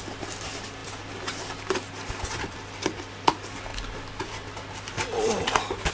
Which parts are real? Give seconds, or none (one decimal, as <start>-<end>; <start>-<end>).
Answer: 0.0-5.9